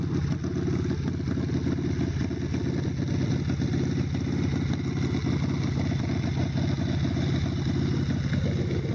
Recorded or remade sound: recorded